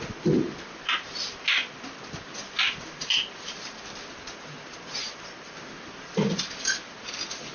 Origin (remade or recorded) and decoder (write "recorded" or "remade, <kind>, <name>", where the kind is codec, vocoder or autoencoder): recorded